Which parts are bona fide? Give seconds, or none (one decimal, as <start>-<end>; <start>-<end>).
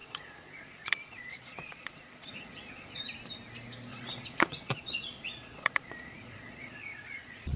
3.0-3.9